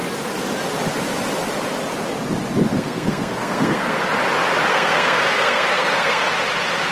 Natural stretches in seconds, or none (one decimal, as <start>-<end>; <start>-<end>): 0.0-2.7; 4.0-4.7; 6.3-6.9